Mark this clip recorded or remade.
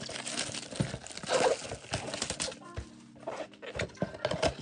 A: recorded